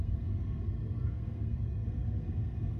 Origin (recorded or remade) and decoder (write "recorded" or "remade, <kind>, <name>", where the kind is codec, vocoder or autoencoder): remade, codec, SNAC